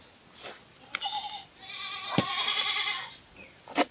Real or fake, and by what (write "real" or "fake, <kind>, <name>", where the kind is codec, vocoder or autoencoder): real